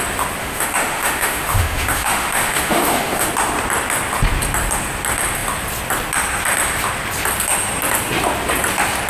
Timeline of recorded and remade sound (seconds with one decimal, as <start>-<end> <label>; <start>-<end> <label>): 0.0-0.4 recorded; 0.4-3.3 remade; 3.3-9.1 recorded